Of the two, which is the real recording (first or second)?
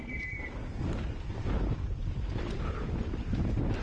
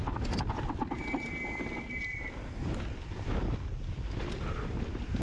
second